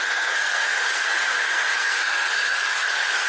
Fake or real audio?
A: fake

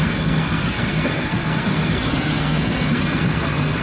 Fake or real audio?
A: fake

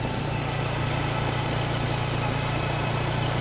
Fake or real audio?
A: real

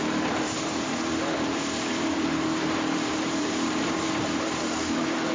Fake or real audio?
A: fake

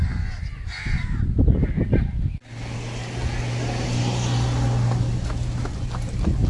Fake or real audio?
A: real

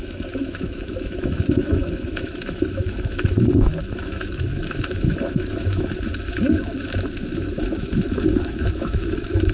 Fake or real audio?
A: fake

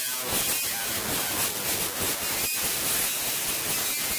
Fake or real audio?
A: real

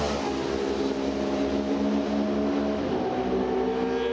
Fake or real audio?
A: real